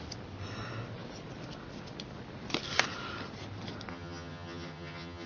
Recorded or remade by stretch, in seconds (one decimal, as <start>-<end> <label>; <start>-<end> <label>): 0.0-3.9 recorded; 3.9-5.3 remade